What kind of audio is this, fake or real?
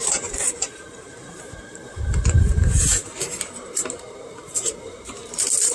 fake